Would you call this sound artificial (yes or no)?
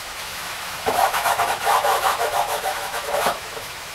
yes